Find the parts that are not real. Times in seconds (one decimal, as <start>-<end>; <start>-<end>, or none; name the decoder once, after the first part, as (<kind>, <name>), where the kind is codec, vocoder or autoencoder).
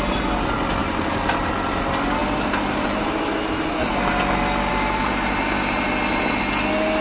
0.8-1.5 (vocoder, BigVGAN v2); 4.7-6.4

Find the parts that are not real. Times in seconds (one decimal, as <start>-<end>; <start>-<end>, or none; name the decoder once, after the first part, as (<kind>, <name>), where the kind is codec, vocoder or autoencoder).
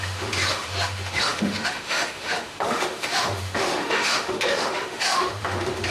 0.0-5.9 (autoencoder, DAC-VAE)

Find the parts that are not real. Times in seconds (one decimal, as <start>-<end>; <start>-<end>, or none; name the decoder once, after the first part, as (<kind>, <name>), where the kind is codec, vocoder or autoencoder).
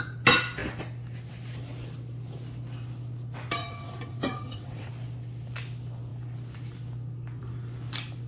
3.6-4.9 (vocoder, WaveNeXt)